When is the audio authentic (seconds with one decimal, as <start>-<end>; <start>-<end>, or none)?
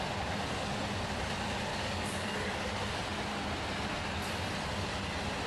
0.0-1.7; 2.7-5.5